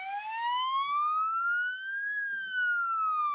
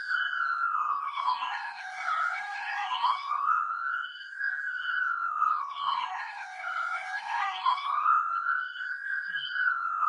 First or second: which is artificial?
second